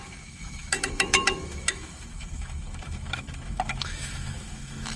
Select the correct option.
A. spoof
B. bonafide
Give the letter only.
A